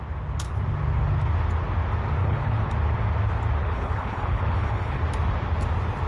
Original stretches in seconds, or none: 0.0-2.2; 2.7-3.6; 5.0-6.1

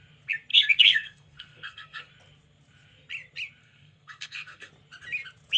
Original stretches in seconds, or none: 0.0-0.5; 2.1-3.6; 4.7-5.6

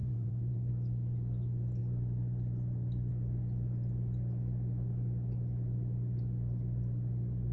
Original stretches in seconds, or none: 0.7-7.5

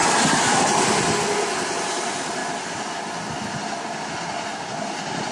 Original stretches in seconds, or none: 0.0-5.3

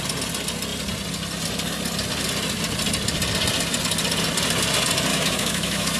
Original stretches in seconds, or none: 0.0-5.1

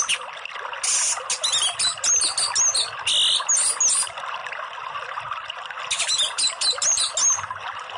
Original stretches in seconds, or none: 0.0-8.0

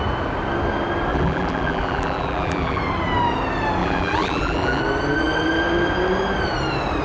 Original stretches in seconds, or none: 0.0-1.1; 2.8-3.8; 4.8-7.0

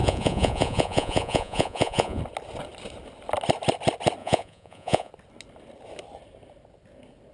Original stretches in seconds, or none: 2.2-4.2; 5.1-7.3